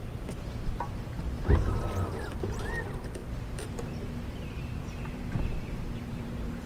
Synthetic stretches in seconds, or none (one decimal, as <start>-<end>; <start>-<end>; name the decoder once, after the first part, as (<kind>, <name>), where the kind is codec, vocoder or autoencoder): 0.0-6.7 (vocoder, BigVGAN v2)